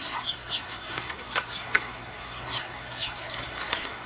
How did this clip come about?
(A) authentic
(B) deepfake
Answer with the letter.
B